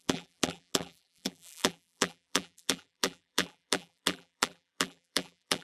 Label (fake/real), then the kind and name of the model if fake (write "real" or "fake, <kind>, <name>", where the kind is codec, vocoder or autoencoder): fake, vocoder, BigVGAN v2